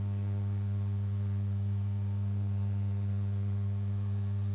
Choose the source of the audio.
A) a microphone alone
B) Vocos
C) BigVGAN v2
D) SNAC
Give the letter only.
D